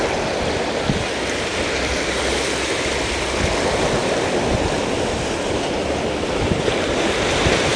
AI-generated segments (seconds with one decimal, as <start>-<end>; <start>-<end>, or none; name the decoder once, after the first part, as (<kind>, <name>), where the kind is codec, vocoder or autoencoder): 0.0-7.8 (vocoder, BigVGAN v2)